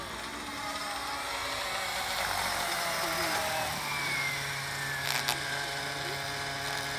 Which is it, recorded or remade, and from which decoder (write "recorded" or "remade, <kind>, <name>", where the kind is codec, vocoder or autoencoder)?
recorded